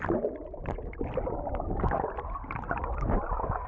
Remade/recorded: recorded